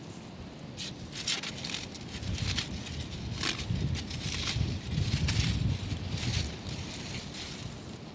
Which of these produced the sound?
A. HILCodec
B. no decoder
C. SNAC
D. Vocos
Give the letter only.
B